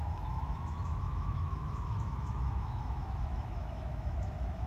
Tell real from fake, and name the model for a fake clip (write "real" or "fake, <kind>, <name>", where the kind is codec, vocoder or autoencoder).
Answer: fake, autoencoder, DAC-VAE